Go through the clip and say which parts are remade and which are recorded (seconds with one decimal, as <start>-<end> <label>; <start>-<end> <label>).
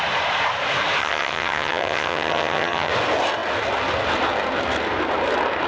0.0-1.0 recorded; 1.0-2.9 remade; 2.9-5.7 recorded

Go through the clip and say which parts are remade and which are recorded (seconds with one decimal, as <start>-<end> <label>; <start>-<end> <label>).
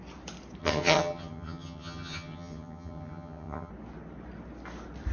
0.0-0.6 recorded; 0.6-3.7 remade; 3.7-5.1 recorded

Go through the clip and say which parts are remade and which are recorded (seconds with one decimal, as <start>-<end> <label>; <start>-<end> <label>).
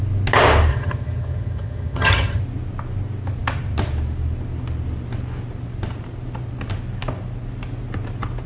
0.0-0.7 recorded; 0.7-2.4 remade; 2.4-8.5 recorded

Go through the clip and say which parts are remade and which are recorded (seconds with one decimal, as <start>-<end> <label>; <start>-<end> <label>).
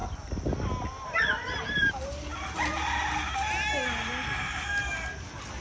0.0-5.6 recorded